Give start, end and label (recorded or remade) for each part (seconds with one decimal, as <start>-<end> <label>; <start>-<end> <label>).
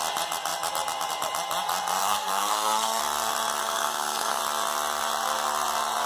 0.0-2.0 recorded; 2.0-3.0 remade; 3.0-3.6 recorded; 3.6-4.4 remade; 4.4-6.1 recorded